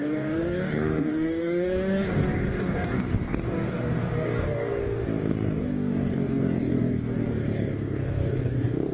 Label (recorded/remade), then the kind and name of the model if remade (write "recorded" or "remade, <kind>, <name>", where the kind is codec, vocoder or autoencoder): remade, codec, DAC